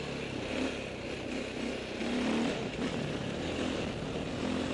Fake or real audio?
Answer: real